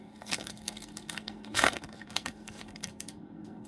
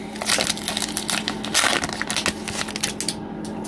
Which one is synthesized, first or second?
first